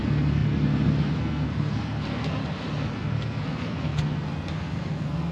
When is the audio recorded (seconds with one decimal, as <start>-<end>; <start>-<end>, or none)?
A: 2.4-2.9